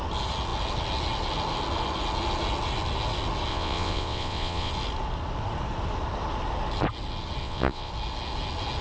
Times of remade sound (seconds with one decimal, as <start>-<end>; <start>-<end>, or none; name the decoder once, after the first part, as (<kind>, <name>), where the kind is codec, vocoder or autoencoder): 3.5-4.7 (vocoder, WaveNeXt); 7.4-7.9

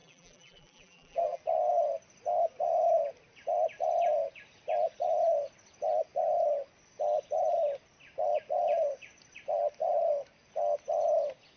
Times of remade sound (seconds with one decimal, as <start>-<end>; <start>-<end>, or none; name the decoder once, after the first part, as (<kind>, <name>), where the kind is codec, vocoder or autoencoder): 0.0-1.4 (vocoder, BigVGAN v2)

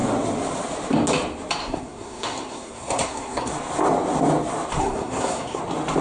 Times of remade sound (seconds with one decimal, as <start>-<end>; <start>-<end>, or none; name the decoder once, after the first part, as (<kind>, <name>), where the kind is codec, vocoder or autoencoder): 1.6-3.5 (codec, SNAC); 4.8-5.6

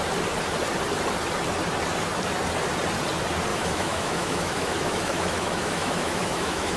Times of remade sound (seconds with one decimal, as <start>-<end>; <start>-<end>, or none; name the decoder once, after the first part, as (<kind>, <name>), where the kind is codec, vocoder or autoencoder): 3.5-6.8 (autoencoder, DAC-VAE)

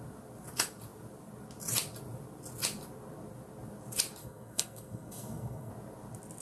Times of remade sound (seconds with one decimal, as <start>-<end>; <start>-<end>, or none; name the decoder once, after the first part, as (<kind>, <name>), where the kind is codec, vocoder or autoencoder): 4.2-5.7 (codec, SNAC)

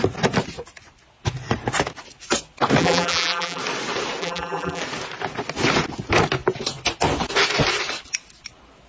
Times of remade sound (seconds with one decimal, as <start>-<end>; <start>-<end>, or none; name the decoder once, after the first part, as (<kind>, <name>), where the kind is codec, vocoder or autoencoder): 2.8-3.6 (vocoder, BigVGAN v2); 4.2-4.8

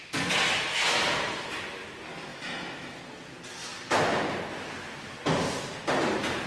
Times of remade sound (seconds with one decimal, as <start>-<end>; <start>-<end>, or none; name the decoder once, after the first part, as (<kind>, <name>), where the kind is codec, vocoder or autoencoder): 2.3-3.0 (autoencoder, DAC-VAE)

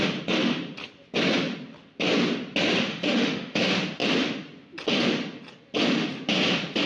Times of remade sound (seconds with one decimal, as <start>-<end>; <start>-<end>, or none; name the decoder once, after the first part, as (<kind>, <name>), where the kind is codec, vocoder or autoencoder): 2.9-3.6 (autoencoder, DAC-VAE)